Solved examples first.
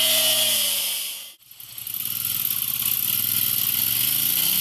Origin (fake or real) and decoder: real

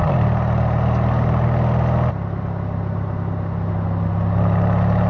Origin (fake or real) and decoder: real